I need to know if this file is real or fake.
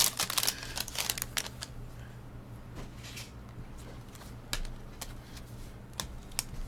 real